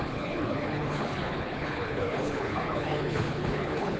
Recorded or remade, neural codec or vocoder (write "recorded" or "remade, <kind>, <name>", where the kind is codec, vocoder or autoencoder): remade, codec, HILCodec